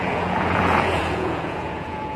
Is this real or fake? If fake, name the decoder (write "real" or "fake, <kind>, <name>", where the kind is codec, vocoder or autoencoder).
fake, vocoder, Vocos